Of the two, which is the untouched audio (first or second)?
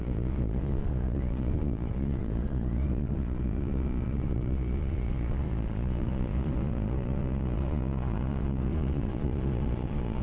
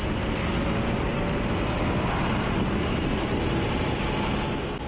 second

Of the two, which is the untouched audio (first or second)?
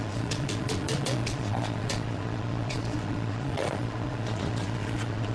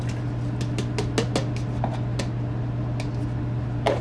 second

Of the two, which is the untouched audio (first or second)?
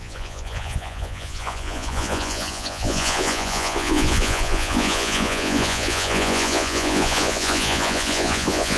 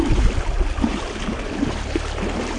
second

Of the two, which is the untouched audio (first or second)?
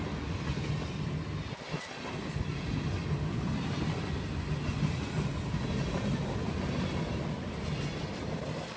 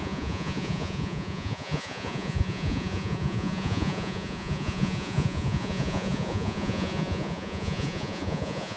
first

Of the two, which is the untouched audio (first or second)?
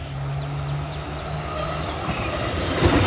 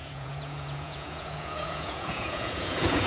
first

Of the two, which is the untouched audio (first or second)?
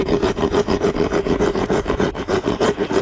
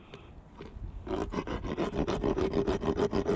second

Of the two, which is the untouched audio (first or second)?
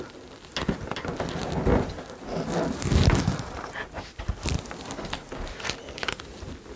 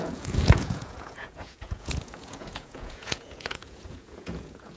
first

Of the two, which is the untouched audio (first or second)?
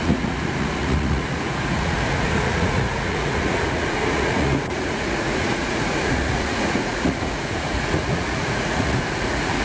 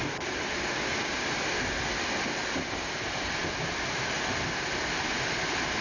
second